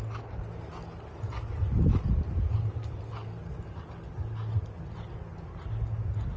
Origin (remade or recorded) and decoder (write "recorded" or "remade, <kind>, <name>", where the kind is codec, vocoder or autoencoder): recorded